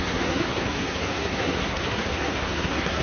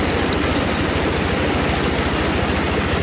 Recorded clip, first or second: second